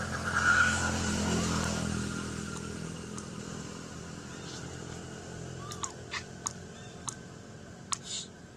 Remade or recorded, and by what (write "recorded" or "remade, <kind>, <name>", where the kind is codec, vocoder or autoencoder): remade, vocoder, BigVGAN v2